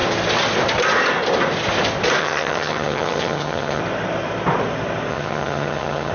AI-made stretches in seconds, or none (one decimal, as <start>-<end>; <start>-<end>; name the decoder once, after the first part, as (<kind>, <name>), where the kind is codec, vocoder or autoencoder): 2.2-3.8 (vocoder, HiFi-GAN); 5.1-6.1